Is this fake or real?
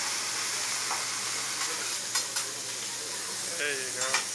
real